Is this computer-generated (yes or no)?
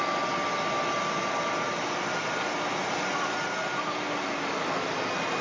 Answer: no